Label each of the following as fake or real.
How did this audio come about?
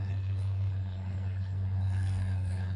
fake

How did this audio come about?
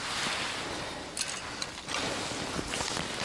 real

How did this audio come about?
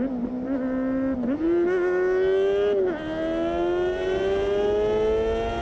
real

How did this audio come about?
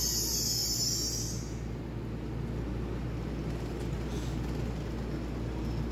real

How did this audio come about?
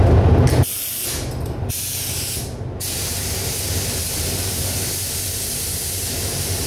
real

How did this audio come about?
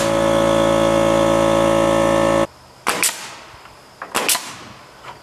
real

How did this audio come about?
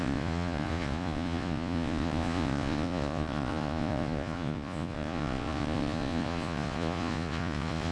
fake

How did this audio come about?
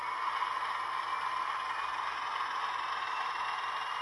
real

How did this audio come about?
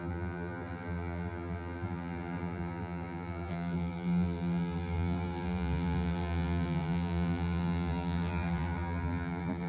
fake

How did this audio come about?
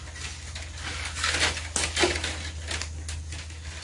real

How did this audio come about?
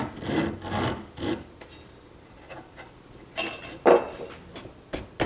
real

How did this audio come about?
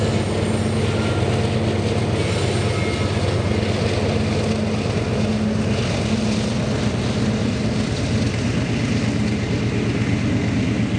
real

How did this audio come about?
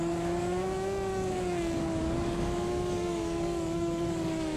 fake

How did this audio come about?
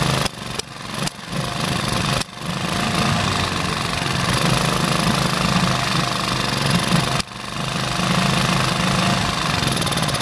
real